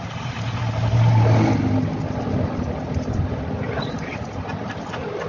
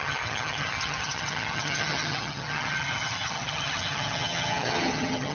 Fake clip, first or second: second